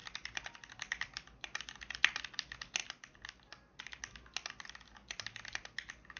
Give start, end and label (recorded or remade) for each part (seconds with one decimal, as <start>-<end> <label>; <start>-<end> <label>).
0.0-6.2 recorded